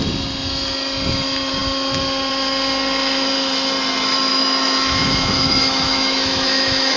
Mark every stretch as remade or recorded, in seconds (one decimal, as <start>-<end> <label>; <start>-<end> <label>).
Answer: 0.0-4.3 recorded; 4.3-7.0 remade